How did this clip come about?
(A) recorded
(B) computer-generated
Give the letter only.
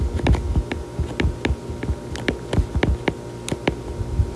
A